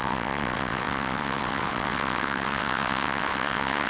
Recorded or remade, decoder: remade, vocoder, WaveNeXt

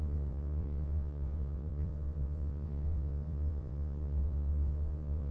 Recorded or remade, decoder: remade, vocoder, WaveNeXt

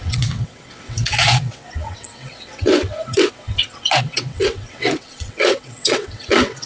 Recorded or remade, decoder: remade, vocoder, WaveNeXt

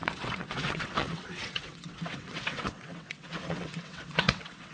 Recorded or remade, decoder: remade, vocoder, WaveNeXt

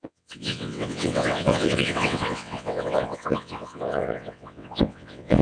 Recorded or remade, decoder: remade, vocoder, WaveNeXt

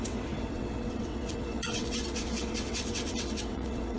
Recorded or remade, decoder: remade, vocoder, WaveNeXt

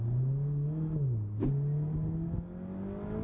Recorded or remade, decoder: recorded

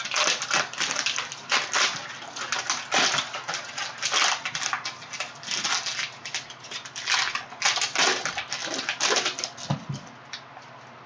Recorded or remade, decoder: recorded